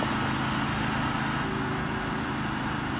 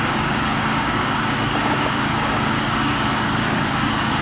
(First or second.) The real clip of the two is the first